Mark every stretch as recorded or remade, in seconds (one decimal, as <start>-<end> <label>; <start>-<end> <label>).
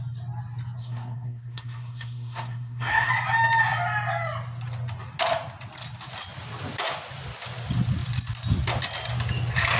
0.0-0.8 recorded; 0.8-3.1 remade; 3.1-9.8 recorded